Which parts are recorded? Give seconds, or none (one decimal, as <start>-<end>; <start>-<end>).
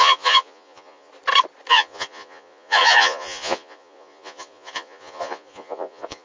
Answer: 1.1-1.7